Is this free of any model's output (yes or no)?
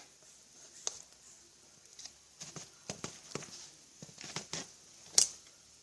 yes